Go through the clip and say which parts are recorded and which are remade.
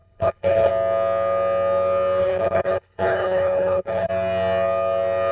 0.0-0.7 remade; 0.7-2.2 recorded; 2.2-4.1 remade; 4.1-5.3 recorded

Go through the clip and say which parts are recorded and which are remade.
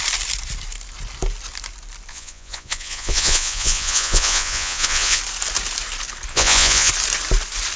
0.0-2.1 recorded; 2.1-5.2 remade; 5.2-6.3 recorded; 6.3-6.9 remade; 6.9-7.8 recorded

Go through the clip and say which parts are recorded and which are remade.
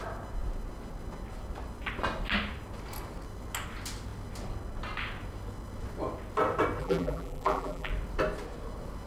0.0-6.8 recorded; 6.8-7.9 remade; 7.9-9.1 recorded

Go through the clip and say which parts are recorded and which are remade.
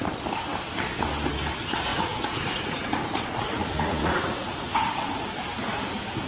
0.0-1.9 recorded; 1.9-5.1 remade; 5.1-6.3 recorded